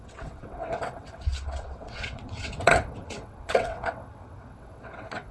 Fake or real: fake